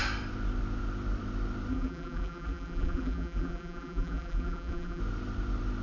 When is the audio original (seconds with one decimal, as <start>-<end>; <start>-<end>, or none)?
0.0-1.7; 5.0-5.8